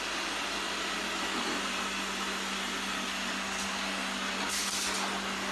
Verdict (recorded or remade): recorded